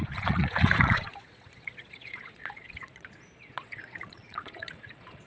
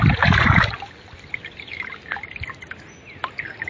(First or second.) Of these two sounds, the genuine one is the second